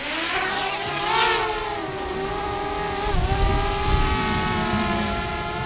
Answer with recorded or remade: recorded